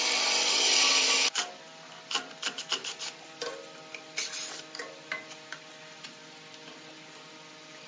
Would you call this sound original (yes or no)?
yes